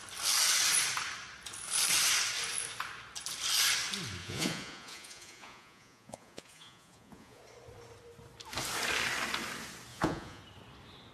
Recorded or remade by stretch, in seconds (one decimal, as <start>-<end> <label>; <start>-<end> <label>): 0.0-4.2 recorded; 4.2-7.4 remade; 7.4-9.9 recorded; 9.9-10.4 remade; 10.4-11.1 recorded